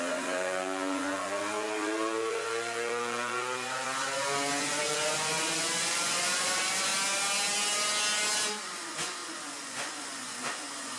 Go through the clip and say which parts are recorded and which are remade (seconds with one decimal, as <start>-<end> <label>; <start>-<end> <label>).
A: 0.0-6.9 remade; 6.9-8.6 recorded; 8.6-11.0 remade